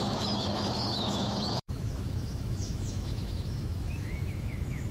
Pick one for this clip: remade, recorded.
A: remade